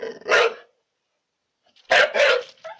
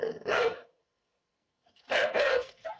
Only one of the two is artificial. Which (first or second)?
second